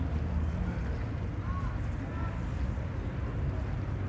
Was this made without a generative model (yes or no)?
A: yes